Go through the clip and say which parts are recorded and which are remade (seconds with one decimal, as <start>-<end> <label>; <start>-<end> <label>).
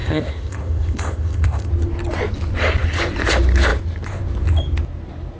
0.0-1.7 remade; 1.7-5.4 recorded